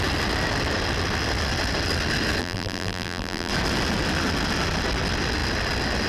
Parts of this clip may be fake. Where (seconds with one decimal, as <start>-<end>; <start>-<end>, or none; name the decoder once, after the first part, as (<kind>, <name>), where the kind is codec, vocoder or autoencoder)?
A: 2.4-3.5 (vocoder, BigVGAN v2)